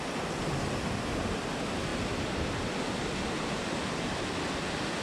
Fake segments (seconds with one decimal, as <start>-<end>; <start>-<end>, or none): none